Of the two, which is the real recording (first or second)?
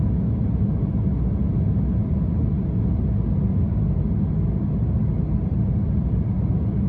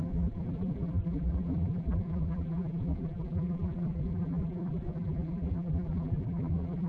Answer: first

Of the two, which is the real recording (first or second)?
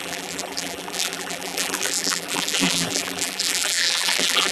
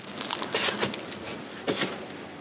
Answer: second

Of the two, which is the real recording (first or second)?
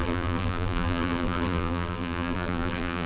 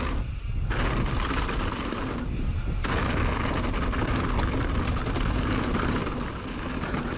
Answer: second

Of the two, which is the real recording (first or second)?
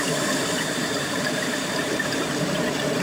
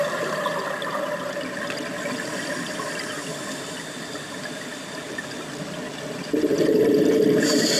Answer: second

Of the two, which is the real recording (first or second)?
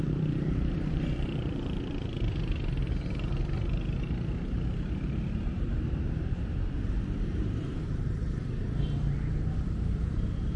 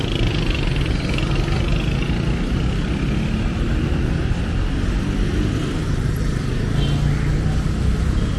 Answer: second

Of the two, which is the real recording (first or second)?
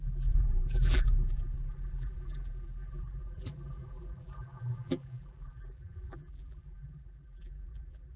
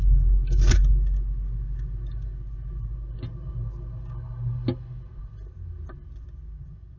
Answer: second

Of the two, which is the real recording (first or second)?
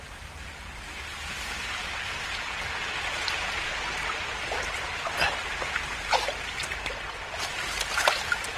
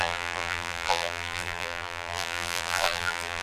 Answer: first